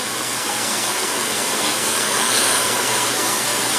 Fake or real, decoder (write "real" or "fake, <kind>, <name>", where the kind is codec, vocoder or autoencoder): fake, codec, SNAC